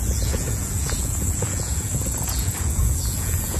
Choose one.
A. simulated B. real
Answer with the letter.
A